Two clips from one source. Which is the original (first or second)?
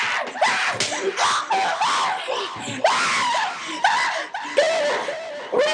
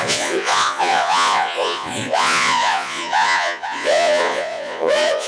first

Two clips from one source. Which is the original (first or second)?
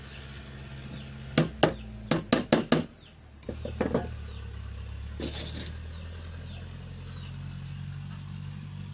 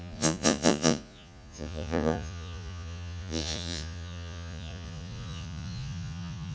first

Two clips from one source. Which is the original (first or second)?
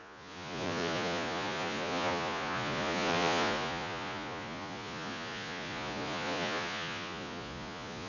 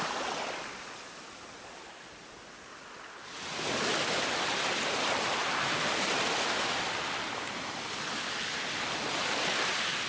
second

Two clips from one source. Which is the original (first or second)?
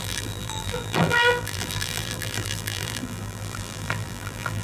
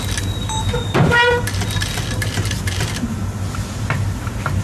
second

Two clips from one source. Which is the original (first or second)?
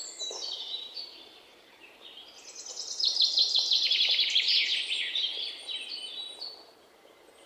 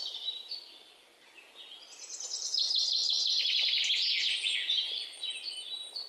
second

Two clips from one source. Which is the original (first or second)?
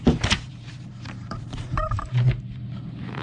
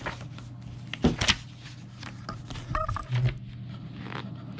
second